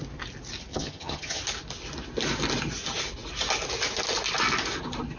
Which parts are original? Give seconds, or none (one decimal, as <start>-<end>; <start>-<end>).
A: 0.0-0.7; 1.4-5.2